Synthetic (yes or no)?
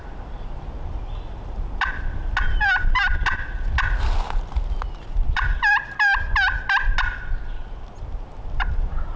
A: no